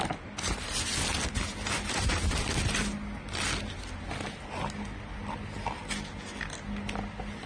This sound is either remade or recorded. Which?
recorded